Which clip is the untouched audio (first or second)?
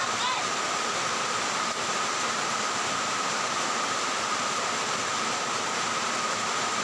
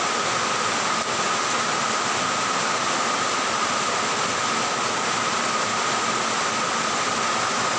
second